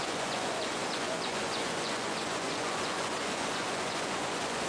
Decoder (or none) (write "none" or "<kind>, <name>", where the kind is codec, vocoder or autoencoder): vocoder, Vocos